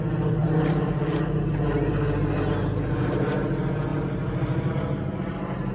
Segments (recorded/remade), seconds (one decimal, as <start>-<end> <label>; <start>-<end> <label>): 0.0-5.7 recorded